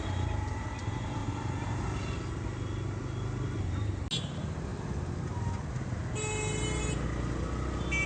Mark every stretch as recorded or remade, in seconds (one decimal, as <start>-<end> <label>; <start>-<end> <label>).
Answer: 0.0-1.2 recorded; 1.2-1.8 remade; 1.8-8.1 recorded